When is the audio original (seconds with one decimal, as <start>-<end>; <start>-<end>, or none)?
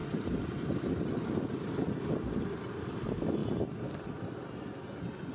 0.0-5.3